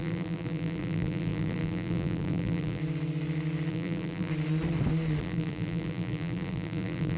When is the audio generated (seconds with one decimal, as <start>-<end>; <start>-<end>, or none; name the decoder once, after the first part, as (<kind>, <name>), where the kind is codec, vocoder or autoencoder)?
0.0-2.8 (vocoder, BigVGAN v2); 3.7-4.3; 5.2-7.2